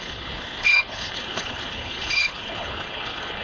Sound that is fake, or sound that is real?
fake